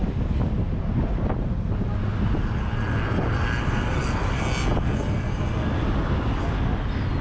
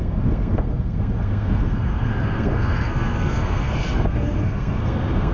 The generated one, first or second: second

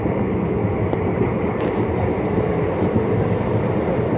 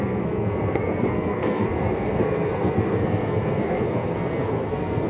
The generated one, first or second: second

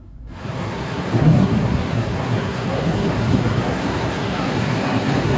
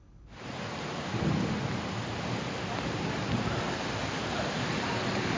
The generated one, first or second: first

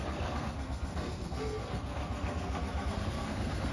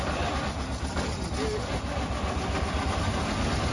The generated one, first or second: first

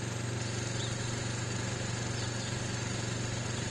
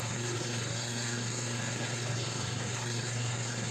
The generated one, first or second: second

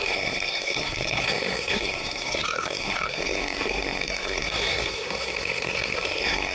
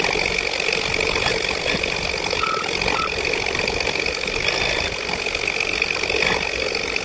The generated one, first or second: first